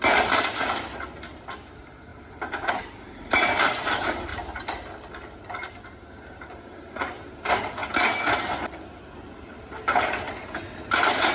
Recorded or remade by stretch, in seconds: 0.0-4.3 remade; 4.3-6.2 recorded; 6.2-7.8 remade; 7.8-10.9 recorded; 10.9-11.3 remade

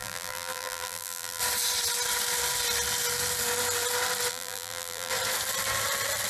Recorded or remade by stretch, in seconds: 0.0-1.4 remade; 1.4-4.3 recorded; 4.3-5.1 remade; 5.1-6.3 recorded